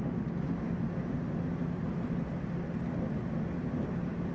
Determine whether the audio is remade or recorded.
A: recorded